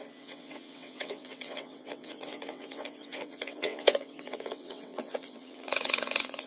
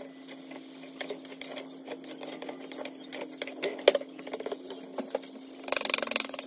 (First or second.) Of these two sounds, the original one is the second